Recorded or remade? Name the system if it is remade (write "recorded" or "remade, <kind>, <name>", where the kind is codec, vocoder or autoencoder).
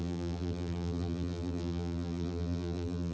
remade, vocoder, BigVGAN v2